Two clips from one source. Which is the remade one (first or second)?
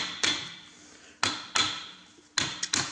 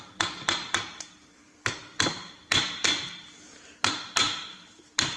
second